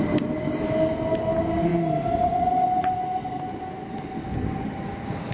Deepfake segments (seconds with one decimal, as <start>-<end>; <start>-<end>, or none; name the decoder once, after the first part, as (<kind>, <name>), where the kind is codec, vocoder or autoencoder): none